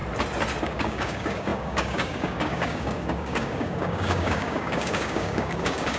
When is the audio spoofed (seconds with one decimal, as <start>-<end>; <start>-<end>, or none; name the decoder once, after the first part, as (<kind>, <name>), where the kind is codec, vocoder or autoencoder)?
0.6-6.0 (codec, DAC)